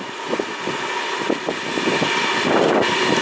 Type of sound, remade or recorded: recorded